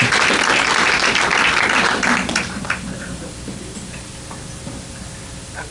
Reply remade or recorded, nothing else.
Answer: recorded